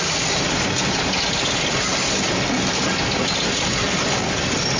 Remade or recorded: recorded